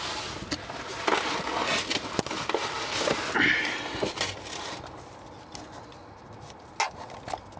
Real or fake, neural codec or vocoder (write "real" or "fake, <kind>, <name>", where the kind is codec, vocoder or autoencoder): real